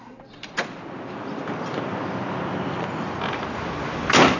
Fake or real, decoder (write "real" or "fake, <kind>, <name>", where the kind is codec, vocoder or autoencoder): real